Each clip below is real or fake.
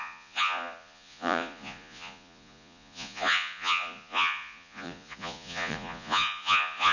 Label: fake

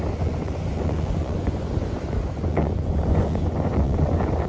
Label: fake